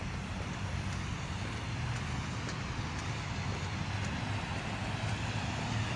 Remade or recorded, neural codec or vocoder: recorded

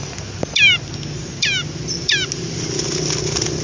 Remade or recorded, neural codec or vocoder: recorded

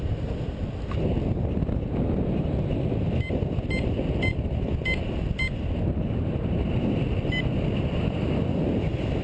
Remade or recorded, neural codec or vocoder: recorded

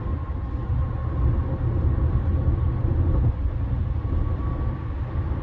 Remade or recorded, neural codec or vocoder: recorded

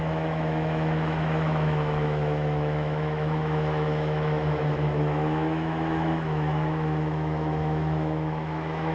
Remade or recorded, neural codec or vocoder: remade, autoencoder, DAC-VAE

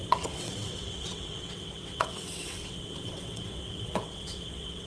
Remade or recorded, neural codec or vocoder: remade, vocoder, WaveNeXt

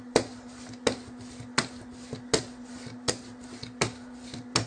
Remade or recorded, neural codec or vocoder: recorded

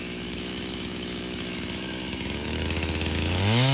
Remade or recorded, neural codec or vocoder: remade, autoencoder, DAC-VAE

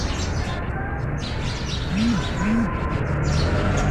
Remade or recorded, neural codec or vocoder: recorded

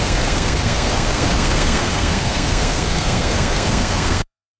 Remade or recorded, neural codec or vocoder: remade, codec, SNAC